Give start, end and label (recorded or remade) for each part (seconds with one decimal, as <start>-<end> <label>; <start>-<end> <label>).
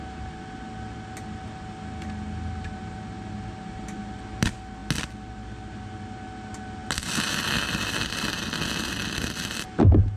0.0-10.2 recorded